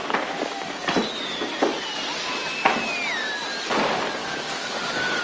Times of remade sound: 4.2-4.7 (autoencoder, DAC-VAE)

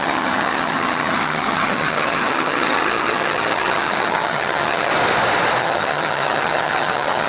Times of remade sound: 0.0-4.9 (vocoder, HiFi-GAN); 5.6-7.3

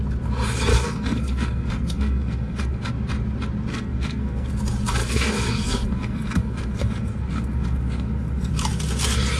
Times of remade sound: 0.7-2.9 (codec, SNAC); 3.7-4.6; 5.0-8.5

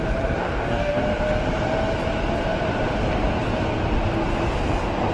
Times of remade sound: 0.4-1.0 (codec, DAC)

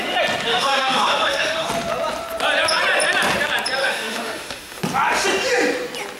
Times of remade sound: 0.5-1.7 (autoencoder, DAC-VAE); 3.8-4.8

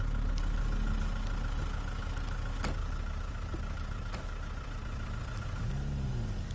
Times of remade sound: 2.8-5.7 (vocoder, BigVGAN v2)

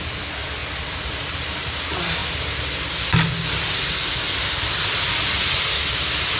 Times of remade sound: none